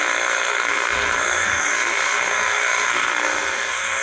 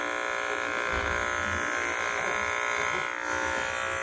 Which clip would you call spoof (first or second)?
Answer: first